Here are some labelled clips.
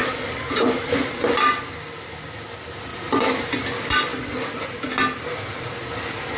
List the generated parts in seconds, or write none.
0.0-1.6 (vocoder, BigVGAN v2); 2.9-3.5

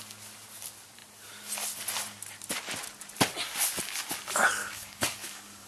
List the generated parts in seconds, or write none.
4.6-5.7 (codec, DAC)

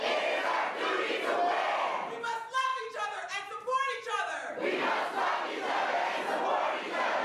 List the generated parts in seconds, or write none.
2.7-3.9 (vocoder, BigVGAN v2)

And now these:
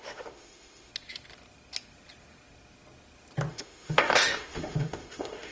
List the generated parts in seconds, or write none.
0.0-0.9 (autoencoder, DAC-VAE); 3.5-5.5

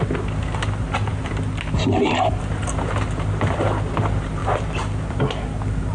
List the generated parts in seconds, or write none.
none